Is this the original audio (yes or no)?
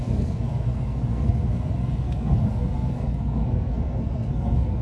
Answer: no